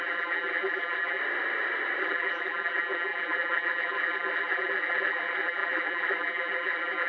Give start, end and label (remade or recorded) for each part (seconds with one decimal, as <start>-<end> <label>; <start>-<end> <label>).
0.0-1.2 remade; 1.2-2.0 recorded; 2.0-7.1 remade